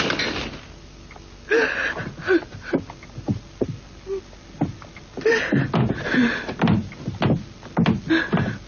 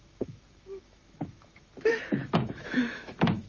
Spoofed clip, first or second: second